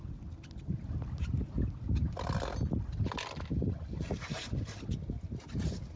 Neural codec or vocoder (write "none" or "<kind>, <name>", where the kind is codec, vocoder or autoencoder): none